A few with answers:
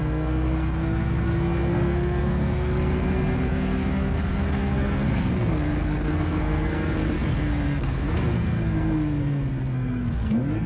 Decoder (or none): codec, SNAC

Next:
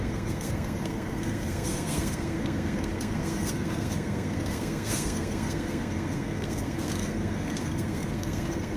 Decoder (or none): codec, SNAC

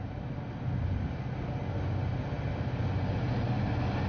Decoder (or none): none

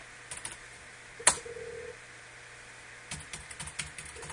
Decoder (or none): none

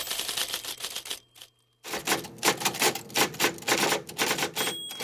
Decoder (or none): none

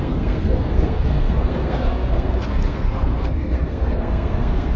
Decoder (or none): codec, SNAC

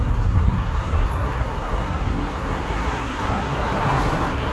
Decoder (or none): codec, SNAC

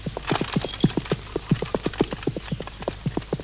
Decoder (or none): none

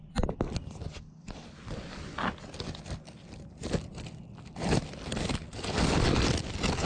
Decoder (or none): none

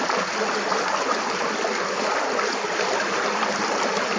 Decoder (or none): none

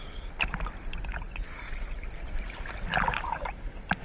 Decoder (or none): none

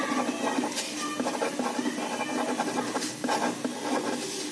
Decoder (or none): none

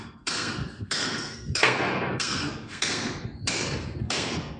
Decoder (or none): codec, SNAC